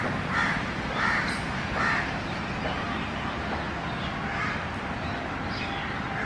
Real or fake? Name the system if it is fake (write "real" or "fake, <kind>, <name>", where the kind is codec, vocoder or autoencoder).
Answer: real